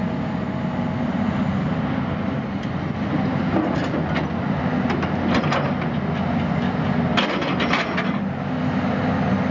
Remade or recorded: recorded